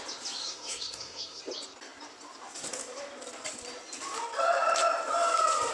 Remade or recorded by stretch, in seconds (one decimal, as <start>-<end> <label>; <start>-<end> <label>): 0.0-0.4 recorded; 0.4-1.4 remade; 1.4-5.7 recorded